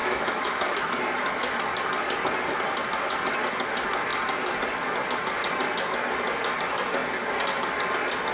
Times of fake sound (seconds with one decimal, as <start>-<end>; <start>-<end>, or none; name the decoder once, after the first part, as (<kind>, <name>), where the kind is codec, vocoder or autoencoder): 0.0-0.7 (autoencoder, DAC-VAE)